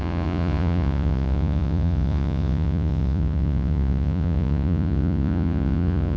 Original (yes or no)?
no